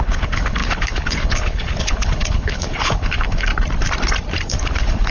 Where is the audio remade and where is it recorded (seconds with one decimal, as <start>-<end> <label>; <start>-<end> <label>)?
0.0-3.5 remade; 3.5-4.4 recorded; 4.4-5.1 remade